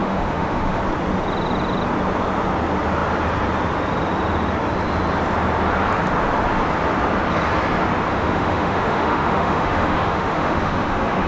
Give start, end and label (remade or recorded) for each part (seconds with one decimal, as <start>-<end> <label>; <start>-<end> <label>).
0.0-0.8 remade; 0.8-8.1 recorded; 8.1-11.3 remade